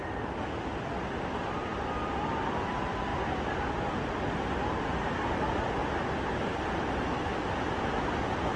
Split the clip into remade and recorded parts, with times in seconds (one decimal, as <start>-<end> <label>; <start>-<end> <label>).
0.0-3.1 recorded; 3.1-4.1 remade; 4.1-6.5 recorded; 6.5-8.6 remade